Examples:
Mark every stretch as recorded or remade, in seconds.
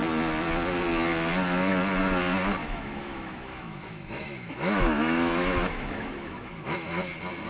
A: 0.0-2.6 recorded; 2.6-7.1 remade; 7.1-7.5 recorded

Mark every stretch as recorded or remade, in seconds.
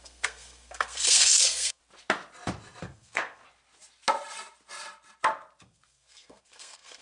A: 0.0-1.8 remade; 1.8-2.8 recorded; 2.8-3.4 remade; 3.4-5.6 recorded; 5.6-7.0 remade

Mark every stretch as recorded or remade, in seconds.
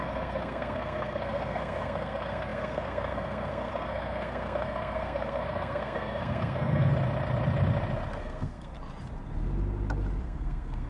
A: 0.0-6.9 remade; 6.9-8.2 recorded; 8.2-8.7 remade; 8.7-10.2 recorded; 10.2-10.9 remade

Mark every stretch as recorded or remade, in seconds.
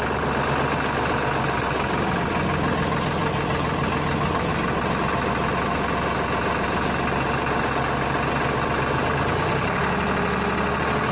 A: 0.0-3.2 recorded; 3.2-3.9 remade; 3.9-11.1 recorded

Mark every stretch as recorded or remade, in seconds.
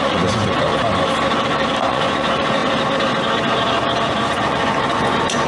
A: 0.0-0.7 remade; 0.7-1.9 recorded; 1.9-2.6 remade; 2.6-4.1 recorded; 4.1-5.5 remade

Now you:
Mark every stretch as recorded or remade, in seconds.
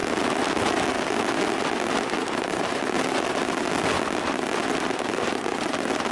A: 0.0-6.1 recorded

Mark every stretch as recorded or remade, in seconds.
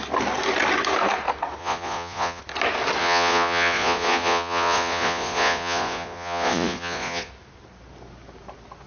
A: 0.0-1.6 recorded; 1.6-2.4 remade; 2.4-3.0 recorded; 3.0-7.3 remade; 7.3-8.9 recorded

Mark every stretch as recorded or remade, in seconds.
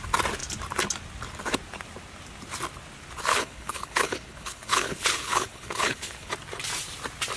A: 0.0-3.3 recorded; 3.3-6.3 remade; 6.3-7.4 recorded